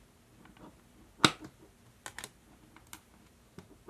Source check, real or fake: real